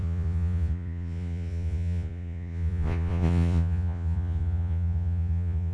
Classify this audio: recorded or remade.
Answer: remade